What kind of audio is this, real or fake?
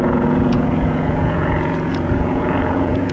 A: fake